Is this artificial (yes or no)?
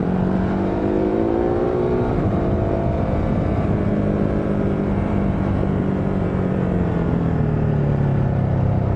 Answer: yes